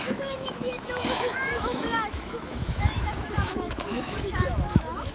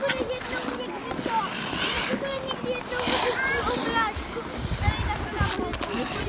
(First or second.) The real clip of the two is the second